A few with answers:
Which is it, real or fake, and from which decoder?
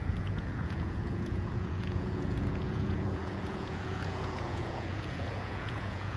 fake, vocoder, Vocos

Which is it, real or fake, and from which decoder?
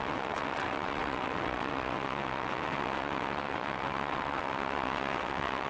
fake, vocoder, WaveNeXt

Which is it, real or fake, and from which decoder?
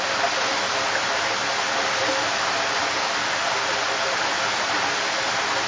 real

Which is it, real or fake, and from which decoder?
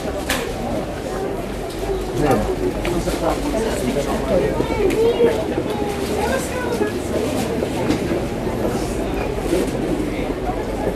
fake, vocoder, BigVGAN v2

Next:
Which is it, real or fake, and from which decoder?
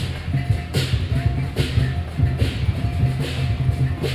real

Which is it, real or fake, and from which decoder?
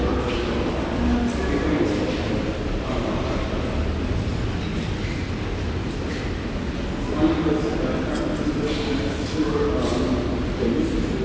real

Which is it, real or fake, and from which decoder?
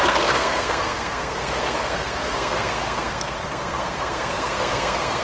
fake, codec, SNAC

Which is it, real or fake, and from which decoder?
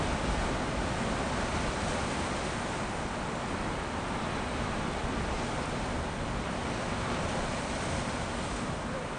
real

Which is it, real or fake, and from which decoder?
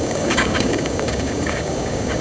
fake, codec, DAC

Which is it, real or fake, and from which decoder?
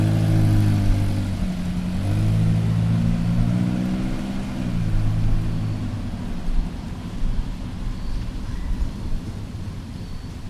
real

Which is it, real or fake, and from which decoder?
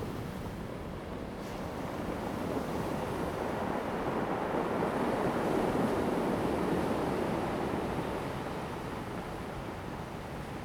real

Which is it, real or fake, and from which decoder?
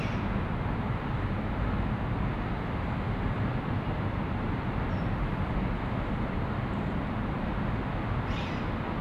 real